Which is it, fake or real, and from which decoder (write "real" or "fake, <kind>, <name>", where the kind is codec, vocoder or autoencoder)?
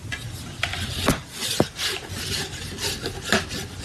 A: real